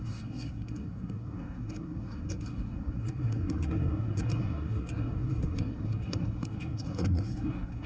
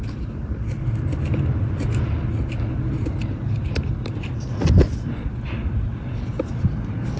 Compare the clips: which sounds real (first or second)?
second